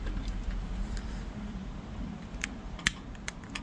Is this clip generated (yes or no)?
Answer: yes